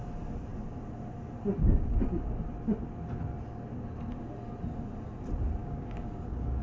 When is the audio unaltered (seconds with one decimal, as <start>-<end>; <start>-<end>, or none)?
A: 0.0-5.6